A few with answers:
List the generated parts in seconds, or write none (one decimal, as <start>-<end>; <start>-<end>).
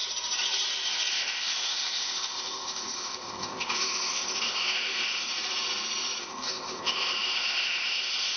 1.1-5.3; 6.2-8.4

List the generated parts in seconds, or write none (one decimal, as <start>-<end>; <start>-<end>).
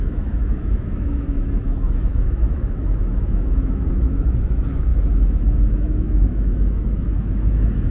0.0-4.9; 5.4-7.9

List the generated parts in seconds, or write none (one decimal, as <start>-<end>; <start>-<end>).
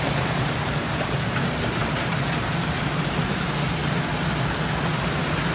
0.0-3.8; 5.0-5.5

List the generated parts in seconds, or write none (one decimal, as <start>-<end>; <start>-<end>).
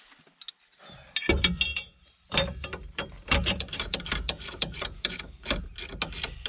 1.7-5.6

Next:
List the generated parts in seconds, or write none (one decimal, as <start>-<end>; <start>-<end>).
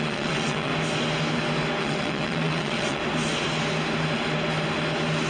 0.0-0.7; 1.8-3.0